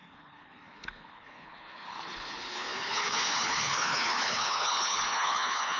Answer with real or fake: fake